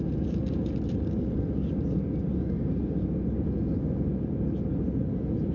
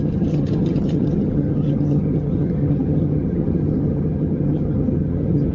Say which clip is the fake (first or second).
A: second